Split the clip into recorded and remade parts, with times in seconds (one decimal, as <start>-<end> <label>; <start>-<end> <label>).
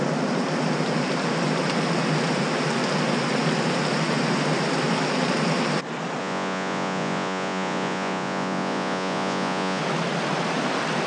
0.0-6.2 recorded; 6.2-9.8 remade; 9.8-11.1 recorded